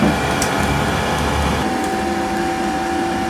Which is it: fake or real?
real